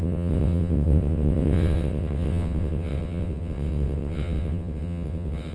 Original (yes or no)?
no